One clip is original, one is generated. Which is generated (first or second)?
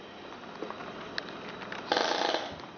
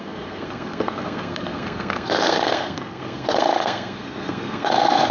second